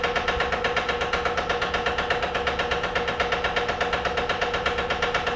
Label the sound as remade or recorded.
recorded